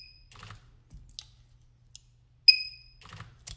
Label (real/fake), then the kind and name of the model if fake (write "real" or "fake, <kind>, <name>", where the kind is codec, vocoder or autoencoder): real